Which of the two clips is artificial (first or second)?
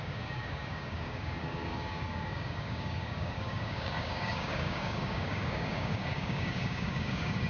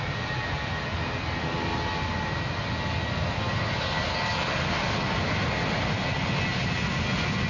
first